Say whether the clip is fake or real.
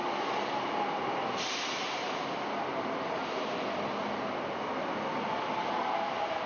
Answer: real